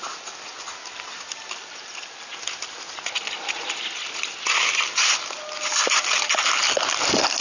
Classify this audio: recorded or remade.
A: recorded